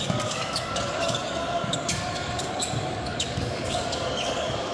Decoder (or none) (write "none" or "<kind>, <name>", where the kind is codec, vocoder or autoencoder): codec, DAC